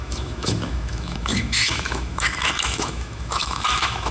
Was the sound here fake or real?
fake